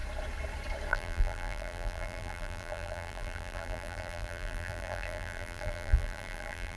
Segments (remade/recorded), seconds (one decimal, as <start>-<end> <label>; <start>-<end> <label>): 0.0-0.9 recorded; 0.9-6.8 remade